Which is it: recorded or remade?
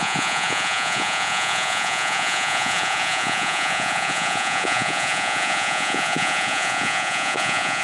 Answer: remade